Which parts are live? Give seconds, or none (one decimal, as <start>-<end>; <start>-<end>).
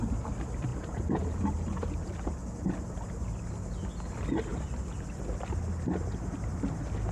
0.0-0.7; 2.8-7.1